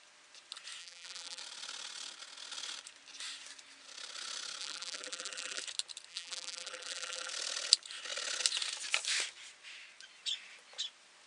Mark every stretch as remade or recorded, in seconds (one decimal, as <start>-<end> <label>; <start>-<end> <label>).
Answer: 0.0-0.8 recorded; 0.8-1.4 remade; 1.4-4.6 recorded; 4.6-5.6 remade; 5.6-6.1 recorded; 6.1-7.3 remade; 7.3-11.3 recorded